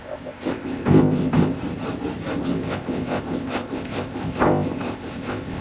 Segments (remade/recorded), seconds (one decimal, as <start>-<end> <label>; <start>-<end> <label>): 0.0-1.6 remade; 1.6-2.4 recorded; 2.4-5.6 remade